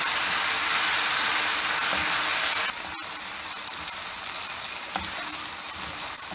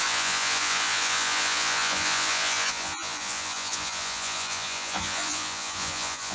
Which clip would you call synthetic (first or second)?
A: second